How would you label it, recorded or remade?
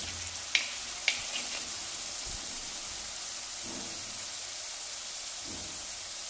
recorded